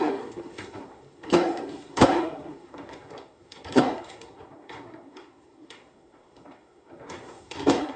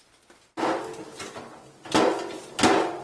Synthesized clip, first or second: first